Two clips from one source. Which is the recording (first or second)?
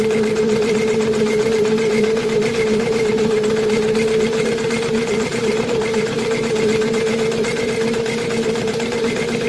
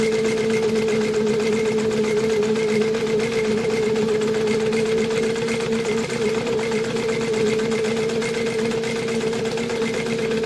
second